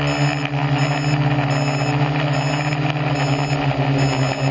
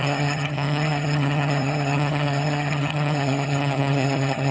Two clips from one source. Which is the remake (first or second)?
second